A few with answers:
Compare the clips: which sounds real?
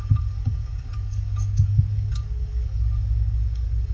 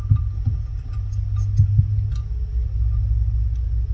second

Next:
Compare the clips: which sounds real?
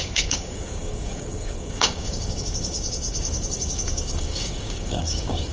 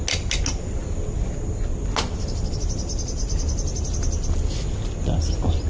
second